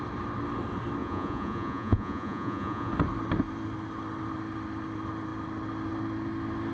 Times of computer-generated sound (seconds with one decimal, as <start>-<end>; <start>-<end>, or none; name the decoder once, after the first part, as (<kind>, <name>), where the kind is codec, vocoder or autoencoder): 1.0-2.9 (vocoder, Vocos)